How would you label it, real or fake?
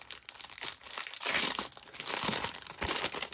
real